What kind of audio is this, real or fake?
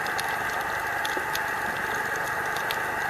real